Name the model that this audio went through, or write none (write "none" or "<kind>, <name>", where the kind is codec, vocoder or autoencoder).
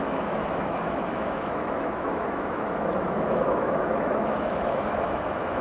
autoencoder, DAC-VAE